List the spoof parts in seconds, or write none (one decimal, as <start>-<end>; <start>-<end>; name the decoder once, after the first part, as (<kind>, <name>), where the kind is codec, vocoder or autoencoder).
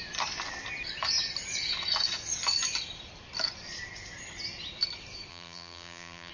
5.3-6.3 (vocoder, BigVGAN v2)